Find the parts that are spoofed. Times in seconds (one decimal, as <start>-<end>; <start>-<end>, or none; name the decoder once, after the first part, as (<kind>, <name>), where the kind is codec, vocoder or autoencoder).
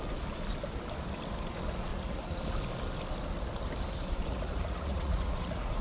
1.9-2.4 (vocoder, Vocos); 4.2-5.8